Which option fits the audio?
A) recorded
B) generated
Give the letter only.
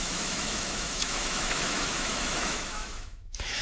B